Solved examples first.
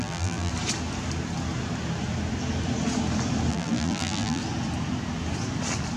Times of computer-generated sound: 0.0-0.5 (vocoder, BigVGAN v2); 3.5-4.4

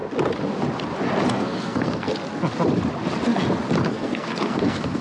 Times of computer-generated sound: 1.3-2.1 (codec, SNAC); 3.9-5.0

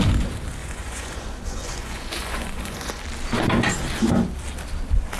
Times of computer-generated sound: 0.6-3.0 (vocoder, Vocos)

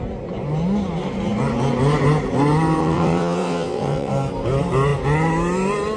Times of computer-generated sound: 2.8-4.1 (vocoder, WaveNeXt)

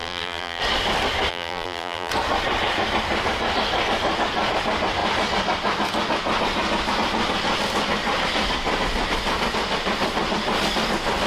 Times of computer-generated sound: 0.0-0.6 (vocoder, BigVGAN v2); 1.3-2.1

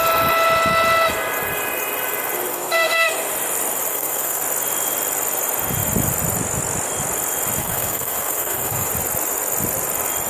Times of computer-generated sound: 2.5-3.3 (codec, SNAC); 3.9-4.4; 7.6-8.9